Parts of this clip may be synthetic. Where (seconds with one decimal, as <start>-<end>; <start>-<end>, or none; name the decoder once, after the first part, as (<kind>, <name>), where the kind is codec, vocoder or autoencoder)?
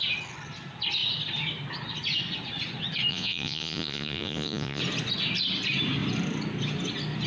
3.1-4.8 (vocoder, Vocos)